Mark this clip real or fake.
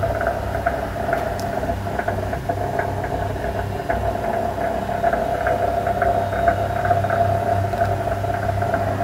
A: real